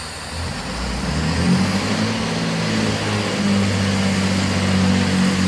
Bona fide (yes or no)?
yes